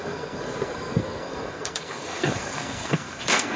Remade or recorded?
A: remade